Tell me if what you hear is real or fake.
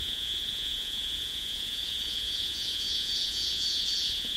fake